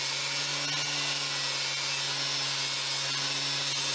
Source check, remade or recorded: recorded